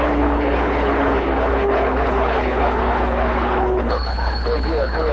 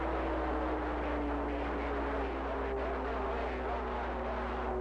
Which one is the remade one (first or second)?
first